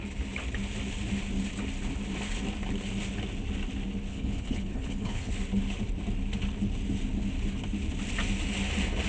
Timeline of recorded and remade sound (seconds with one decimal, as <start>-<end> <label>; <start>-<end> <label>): 0.0-4.1 recorded; 4.1-5.3 remade; 5.3-9.1 recorded